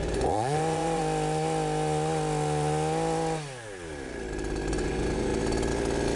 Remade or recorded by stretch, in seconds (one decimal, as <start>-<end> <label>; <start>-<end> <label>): 0.0-1.0 remade; 1.0-4.7 recorded; 4.7-5.3 remade; 5.3-6.2 recorded